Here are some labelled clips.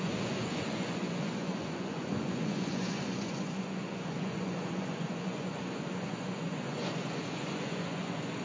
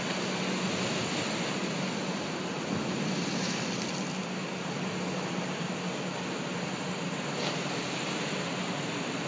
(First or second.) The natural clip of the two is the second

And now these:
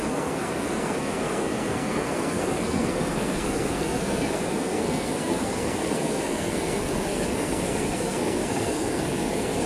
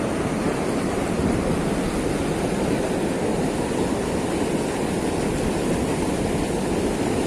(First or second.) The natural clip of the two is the second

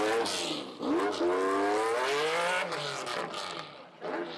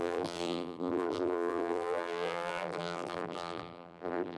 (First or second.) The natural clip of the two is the first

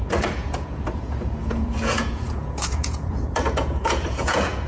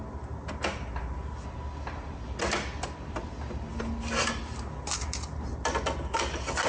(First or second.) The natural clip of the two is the second